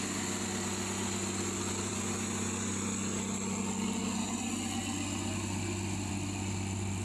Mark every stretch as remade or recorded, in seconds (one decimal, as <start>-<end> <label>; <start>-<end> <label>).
0.0-7.0 recorded